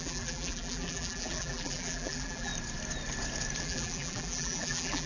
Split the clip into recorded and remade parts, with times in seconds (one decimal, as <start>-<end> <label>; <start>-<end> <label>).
0.0-2.5 remade; 2.5-3.6 recorded; 3.6-5.1 remade